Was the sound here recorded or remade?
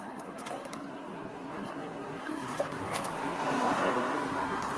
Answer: remade